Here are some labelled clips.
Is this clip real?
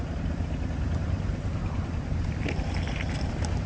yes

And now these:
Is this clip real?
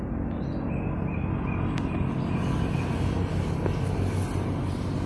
yes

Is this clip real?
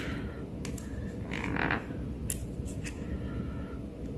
yes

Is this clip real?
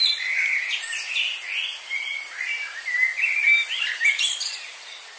yes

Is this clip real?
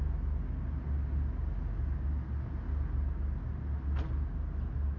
yes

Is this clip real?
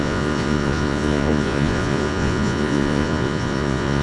no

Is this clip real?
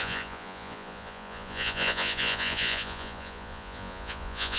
no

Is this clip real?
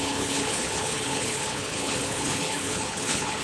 no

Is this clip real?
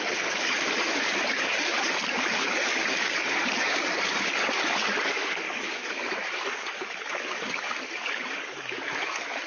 no